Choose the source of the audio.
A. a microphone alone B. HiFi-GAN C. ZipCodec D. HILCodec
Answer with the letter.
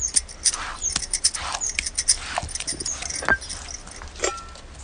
A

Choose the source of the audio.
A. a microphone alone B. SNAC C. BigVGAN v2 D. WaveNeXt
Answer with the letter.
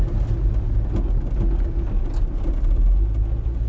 A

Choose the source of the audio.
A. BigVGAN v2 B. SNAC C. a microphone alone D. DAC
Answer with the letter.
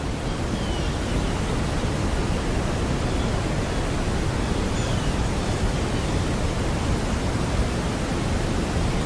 C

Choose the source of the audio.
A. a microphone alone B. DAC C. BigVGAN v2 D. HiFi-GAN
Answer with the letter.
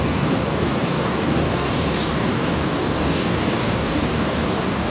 B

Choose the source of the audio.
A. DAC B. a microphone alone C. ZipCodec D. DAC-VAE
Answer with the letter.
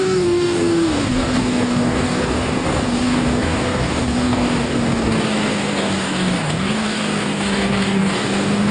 A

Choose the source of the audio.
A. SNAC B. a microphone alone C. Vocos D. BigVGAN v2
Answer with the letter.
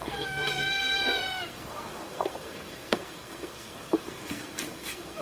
A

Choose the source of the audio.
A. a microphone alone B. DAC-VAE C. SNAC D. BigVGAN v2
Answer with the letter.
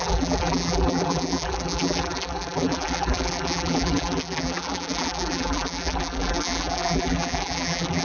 D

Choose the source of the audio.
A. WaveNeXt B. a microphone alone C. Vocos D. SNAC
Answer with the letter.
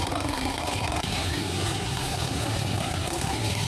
D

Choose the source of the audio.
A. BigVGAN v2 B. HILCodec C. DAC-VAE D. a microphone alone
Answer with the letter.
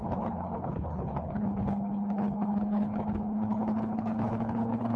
B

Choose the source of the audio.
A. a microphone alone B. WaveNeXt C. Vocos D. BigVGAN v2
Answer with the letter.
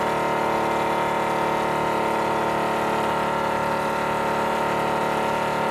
A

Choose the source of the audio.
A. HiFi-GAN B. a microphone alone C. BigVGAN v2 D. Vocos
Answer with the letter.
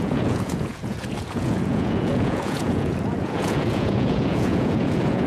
D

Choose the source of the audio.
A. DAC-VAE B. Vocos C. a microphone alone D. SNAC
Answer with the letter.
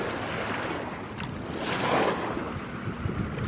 C